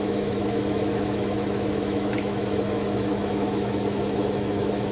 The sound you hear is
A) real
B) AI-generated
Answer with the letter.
B